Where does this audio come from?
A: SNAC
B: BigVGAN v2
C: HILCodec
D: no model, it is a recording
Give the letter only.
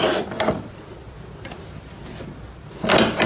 D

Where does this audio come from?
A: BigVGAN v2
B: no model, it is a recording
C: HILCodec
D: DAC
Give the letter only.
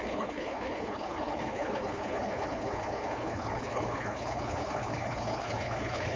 C